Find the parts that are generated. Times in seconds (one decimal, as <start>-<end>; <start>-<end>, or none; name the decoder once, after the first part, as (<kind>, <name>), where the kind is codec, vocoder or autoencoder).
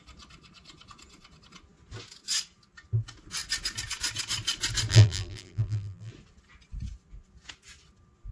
4.9-6.1 (vocoder, BigVGAN v2)